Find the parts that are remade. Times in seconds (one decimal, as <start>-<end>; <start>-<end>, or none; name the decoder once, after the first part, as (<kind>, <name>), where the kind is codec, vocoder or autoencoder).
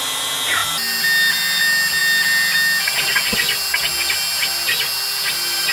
none